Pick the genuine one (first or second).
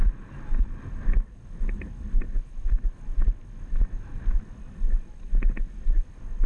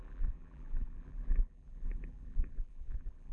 first